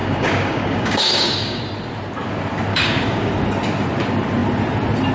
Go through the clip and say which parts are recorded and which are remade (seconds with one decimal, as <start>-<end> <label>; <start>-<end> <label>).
0.0-1.6 remade; 1.6-2.7 recorded; 2.7-3.3 remade; 3.3-5.1 recorded